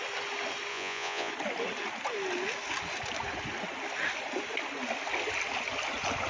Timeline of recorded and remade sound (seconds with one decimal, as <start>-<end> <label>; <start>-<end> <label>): 0.0-0.7 recorded; 0.7-1.3 remade; 1.3-6.3 recorded